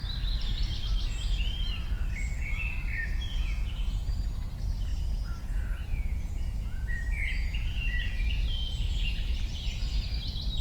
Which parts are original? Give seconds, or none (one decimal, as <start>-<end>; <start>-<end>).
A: 0.0-3.3; 4.1-4.9; 9.4-10.6